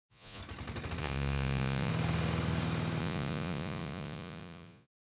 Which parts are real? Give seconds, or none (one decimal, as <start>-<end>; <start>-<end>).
0.4-1.0; 1.9-3.0